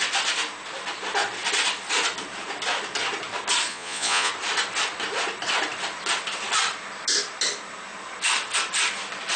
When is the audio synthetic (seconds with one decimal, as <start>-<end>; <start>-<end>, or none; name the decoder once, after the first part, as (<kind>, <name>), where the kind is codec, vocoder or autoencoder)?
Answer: 3.7-4.3 (vocoder, Vocos)